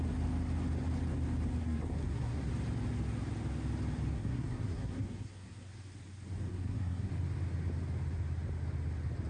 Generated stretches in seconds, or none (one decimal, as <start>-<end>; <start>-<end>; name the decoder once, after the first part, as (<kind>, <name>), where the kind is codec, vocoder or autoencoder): 1.6-2.5 (codec, SNAC); 4.1-5.7; 6.5-7.1